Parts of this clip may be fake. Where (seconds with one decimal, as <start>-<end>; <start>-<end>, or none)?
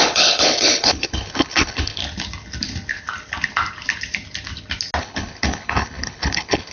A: 0.0-2.0; 5.0-6.7